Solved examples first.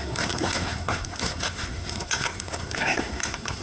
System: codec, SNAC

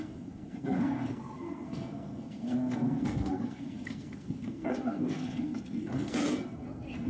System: codec, SNAC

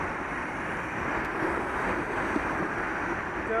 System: none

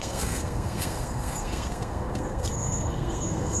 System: codec, SNAC